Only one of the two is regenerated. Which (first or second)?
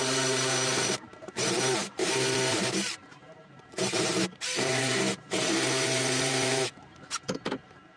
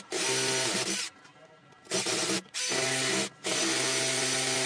first